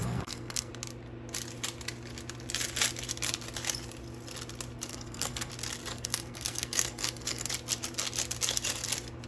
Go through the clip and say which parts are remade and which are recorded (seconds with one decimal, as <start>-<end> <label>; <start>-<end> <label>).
0.0-0.7 remade; 0.7-4.9 recorded; 4.9-5.5 remade; 5.5-5.9 recorded; 5.9-7.5 remade; 7.5-9.3 recorded